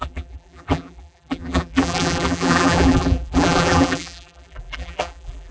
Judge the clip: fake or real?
fake